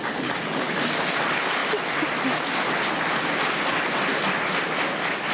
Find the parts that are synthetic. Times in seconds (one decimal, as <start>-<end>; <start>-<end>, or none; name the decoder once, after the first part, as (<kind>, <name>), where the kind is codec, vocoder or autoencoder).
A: none